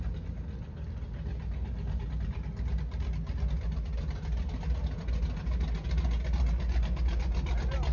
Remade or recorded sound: recorded